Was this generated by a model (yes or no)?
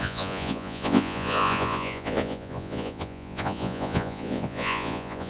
yes